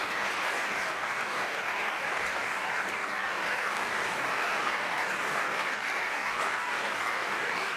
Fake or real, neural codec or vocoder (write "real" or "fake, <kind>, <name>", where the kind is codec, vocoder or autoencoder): fake, codec, DAC